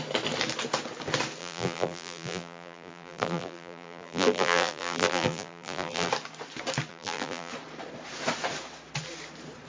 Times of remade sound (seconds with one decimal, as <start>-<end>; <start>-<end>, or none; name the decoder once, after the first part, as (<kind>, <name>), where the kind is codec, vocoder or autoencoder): 1.4-6.1 (vocoder, BigVGAN v2); 6.9-7.5